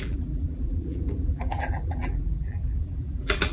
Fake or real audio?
fake